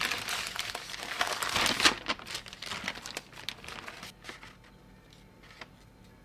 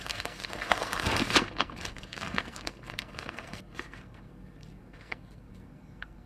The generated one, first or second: second